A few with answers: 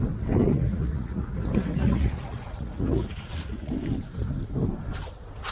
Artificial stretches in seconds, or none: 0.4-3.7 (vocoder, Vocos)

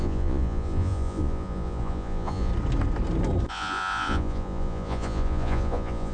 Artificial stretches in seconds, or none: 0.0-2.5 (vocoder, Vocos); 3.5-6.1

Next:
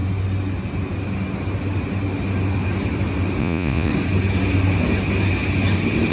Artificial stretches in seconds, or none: 3.4-3.9 (vocoder, Vocos)

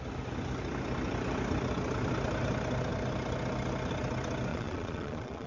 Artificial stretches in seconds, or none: 4.5-5.5 (vocoder, Vocos)

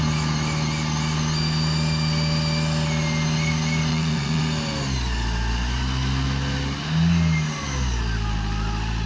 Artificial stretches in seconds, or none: 3.9-4.4 (vocoder, Vocos)

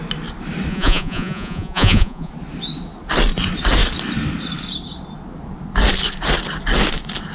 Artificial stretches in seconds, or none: 0.7-2.3 (vocoder, Vocos)

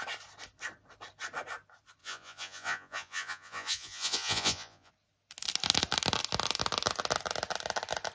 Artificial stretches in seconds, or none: 2.0-4.9 (vocoder, Vocos)

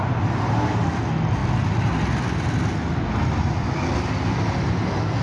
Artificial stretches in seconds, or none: none